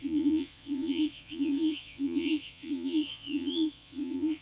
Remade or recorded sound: remade